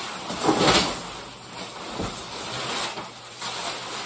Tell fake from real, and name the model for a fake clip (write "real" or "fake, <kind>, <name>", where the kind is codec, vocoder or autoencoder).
real